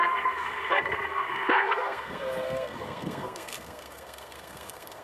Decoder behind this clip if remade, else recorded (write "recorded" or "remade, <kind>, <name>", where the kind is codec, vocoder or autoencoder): remade, codec, SNAC